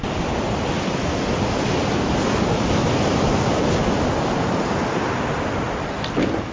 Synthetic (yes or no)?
no